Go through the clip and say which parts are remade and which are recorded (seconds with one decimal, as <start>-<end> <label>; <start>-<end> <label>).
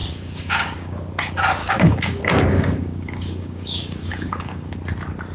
0.0-1.0 remade; 1.0-1.6 recorded; 1.6-4.7 remade; 4.7-5.3 recorded